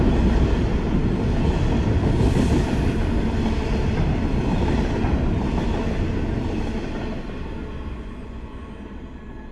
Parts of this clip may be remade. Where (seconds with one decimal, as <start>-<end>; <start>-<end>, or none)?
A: 7.9-8.7